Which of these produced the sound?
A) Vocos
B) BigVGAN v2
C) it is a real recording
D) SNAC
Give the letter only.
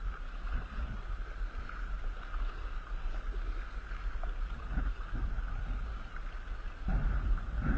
C